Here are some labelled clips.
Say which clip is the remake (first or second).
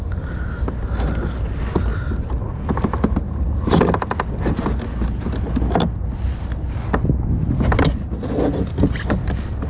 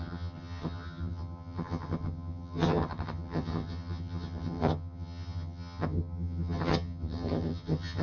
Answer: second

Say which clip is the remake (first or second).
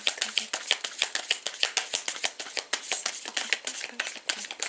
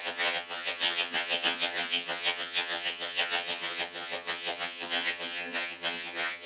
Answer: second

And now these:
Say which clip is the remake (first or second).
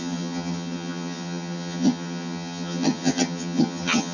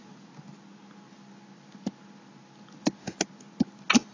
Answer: first